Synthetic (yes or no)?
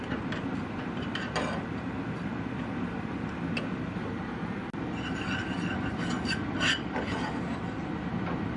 no